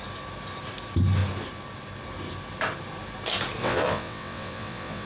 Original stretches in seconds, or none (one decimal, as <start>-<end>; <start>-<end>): 0.0-3.6